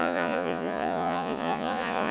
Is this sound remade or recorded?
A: remade